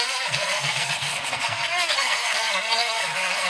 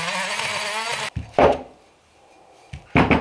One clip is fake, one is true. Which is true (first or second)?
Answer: second